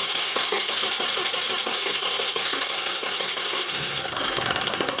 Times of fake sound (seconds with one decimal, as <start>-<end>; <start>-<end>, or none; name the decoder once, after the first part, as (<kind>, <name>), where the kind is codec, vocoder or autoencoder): 0.0-0.8 (codec, SNAC); 1.7-5.0